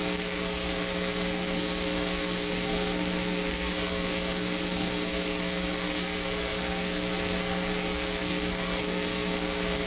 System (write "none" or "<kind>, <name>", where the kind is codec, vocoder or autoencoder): codec, SNAC